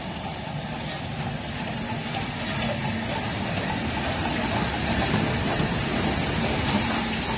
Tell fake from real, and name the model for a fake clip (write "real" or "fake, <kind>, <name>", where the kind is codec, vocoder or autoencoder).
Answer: real